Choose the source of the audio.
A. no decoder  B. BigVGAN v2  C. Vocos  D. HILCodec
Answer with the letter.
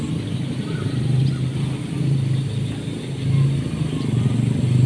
A